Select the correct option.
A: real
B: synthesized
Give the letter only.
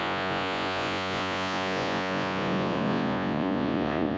B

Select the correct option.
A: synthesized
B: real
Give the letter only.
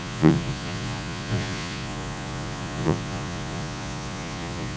A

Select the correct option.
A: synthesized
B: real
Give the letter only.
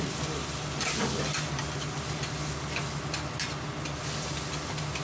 B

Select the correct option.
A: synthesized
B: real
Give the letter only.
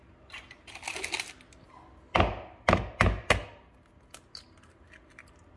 B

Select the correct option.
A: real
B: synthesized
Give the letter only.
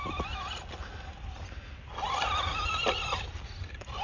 A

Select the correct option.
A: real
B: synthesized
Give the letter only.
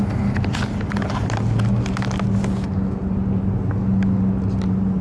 A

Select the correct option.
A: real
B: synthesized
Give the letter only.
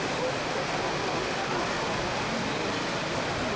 A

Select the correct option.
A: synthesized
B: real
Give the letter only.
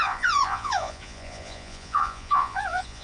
A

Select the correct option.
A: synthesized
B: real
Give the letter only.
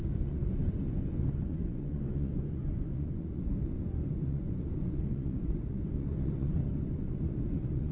A